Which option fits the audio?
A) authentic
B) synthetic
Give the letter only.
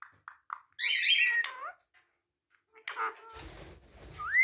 A